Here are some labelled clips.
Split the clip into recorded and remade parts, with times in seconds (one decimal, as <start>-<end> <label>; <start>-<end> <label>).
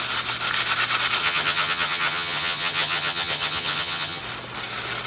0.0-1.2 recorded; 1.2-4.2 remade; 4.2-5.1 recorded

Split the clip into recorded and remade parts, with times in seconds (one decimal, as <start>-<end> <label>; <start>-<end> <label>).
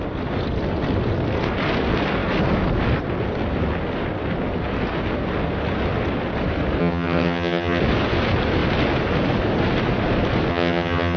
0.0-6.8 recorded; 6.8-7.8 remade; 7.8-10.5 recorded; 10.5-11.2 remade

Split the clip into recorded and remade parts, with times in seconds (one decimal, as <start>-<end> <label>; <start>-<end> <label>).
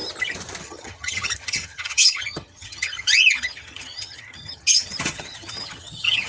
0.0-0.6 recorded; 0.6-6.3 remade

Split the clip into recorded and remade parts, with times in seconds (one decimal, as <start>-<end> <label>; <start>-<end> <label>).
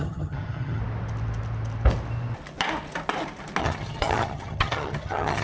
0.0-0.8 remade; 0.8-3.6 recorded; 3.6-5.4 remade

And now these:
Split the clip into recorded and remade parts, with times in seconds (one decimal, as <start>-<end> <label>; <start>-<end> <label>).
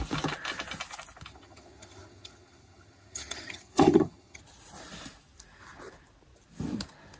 0.0-1.3 recorded; 1.3-4.4 remade; 4.4-7.2 recorded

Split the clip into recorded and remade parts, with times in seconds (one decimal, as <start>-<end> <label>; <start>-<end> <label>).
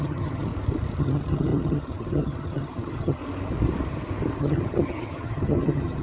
0.0-0.5 remade; 0.5-1.0 recorded; 1.0-3.2 remade; 3.2-4.4 recorded; 4.4-6.0 remade